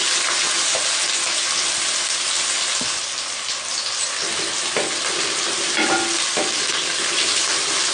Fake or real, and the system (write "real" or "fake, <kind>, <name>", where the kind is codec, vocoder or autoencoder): real